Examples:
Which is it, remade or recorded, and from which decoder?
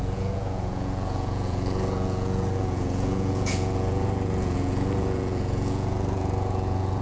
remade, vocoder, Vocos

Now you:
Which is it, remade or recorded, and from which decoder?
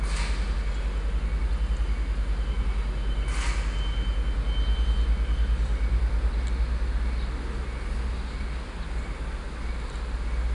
recorded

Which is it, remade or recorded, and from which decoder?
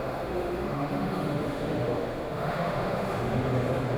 remade, autoencoder, DAC-VAE